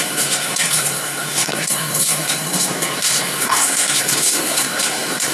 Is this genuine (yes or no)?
no